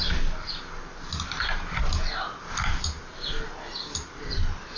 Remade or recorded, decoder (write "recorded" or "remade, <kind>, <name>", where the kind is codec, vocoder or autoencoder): recorded